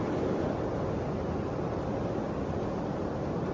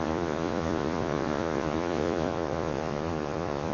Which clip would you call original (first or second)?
first